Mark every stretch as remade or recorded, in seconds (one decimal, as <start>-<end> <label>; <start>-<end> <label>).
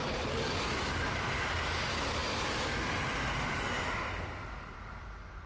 0.0-5.5 recorded